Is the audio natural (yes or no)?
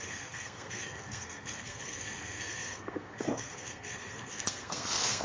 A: no